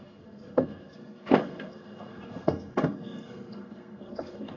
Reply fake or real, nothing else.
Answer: fake